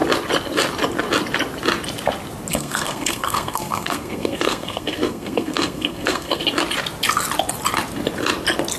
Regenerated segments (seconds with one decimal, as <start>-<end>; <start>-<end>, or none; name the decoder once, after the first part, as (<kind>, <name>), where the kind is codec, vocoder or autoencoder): 2.5-6.4 (codec, SNAC)